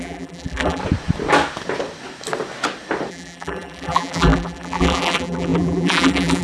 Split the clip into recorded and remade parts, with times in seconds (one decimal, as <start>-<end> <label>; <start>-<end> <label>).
0.0-0.8 remade; 0.8-3.1 recorded; 3.1-6.4 remade